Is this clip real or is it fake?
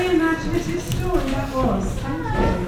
real